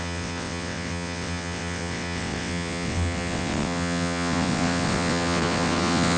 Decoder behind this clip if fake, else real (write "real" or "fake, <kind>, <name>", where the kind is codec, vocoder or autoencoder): fake, vocoder, WaveNeXt